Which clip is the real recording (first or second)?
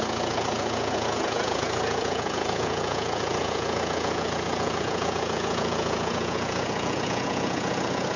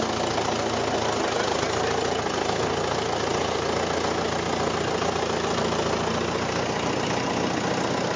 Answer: second